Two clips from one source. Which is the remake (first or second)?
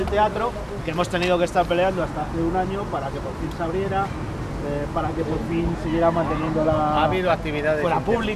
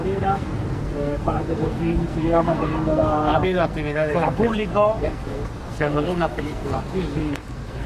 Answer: second